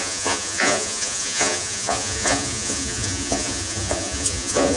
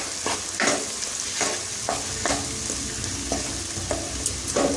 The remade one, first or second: first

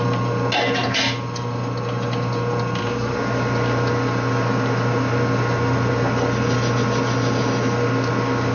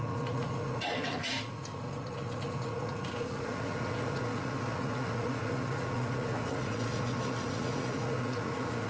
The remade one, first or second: second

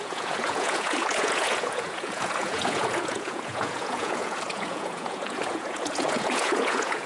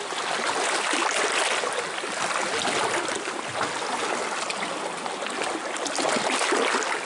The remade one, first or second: first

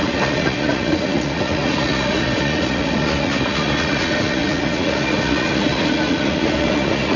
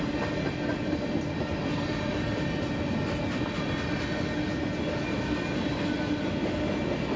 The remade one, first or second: first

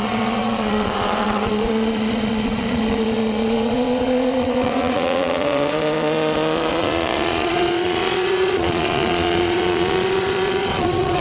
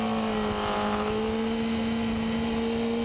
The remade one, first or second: first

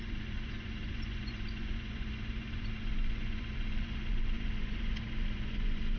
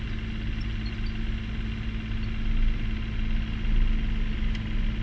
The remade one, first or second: first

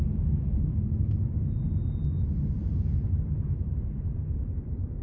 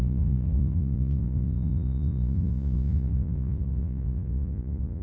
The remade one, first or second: second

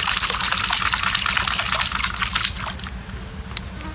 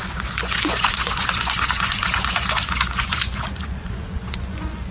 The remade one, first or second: second